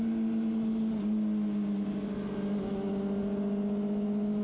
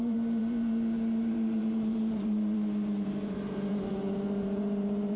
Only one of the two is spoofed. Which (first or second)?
second